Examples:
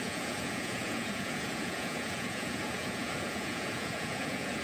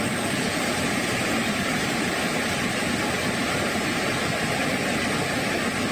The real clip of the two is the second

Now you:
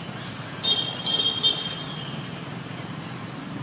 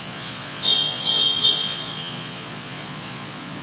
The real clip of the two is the first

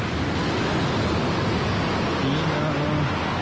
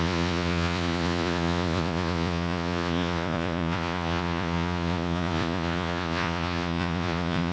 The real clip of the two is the first